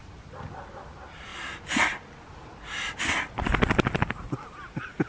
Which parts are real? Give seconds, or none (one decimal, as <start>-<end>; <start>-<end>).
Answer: 0.0-5.1